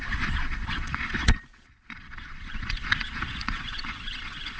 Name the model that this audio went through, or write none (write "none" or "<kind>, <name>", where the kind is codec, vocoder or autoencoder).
vocoder, Vocos